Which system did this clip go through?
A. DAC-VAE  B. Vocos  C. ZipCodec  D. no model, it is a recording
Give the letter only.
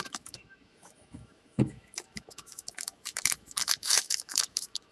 A